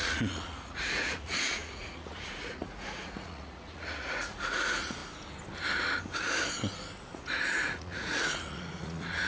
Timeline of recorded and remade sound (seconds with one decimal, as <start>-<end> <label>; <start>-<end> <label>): 0.0-5.0 remade; 5.0-7.0 recorded; 7.0-9.3 remade